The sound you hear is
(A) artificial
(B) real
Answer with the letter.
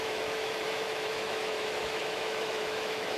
A